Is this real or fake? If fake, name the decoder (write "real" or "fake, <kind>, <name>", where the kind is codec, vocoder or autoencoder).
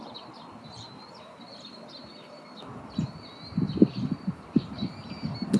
real